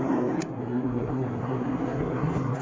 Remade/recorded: remade